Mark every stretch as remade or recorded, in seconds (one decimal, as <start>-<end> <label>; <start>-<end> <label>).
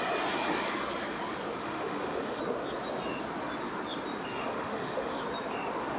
0.0-1.6 recorded; 1.6-2.4 remade; 2.4-4.3 recorded; 4.3-5.2 remade; 5.2-6.0 recorded